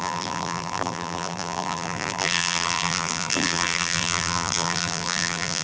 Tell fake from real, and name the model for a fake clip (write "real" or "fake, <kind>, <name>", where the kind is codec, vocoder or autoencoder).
fake, vocoder, BigVGAN v2